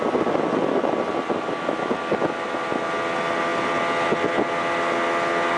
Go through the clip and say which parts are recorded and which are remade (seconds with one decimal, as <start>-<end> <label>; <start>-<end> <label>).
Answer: 0.0-5.6 recorded